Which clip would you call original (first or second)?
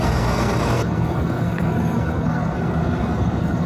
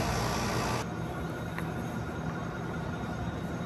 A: second